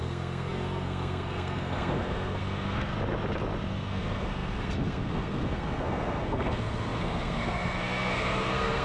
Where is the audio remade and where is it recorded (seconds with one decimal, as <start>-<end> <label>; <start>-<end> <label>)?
0.0-2.9 remade; 2.9-3.7 recorded; 3.7-8.8 remade